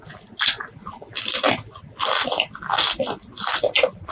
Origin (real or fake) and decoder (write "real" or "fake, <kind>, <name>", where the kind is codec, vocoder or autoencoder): real